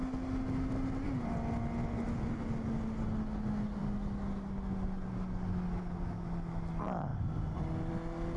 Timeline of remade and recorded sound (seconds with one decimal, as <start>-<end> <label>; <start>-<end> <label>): 0.0-8.4 recorded